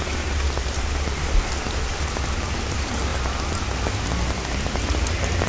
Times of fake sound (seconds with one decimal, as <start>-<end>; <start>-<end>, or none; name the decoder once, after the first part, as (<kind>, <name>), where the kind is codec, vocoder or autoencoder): none